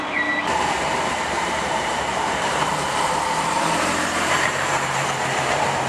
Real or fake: fake